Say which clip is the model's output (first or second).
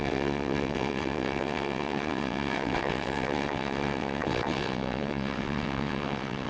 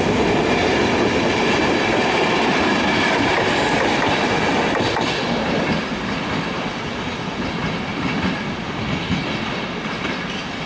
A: first